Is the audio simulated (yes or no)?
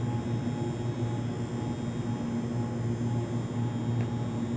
no